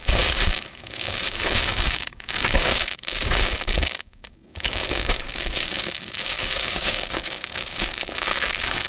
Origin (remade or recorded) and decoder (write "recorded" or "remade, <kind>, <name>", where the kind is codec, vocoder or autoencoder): remade, codec, DAC